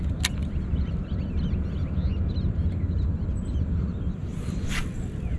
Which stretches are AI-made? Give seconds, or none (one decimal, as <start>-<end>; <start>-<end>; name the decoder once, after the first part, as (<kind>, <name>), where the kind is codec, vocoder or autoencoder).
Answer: 4.2-5.4 (vocoder, BigVGAN v2)